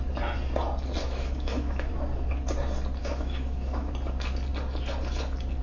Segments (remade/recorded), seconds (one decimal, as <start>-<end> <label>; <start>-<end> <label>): 0.0-1.0 recorded; 1.0-1.9 remade; 1.9-3.0 recorded; 3.0-3.9 remade; 3.9-5.6 recorded